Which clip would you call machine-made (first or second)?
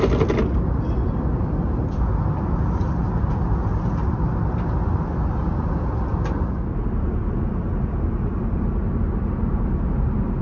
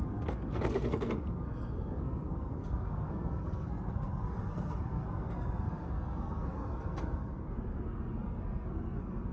second